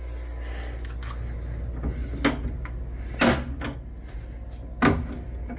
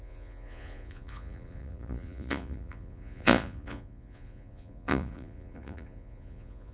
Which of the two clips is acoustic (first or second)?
first